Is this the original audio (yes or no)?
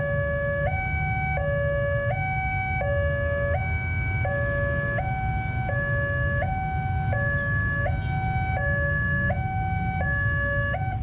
yes